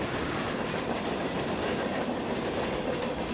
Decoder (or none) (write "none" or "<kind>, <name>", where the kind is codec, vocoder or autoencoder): none